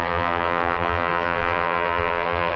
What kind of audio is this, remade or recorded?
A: remade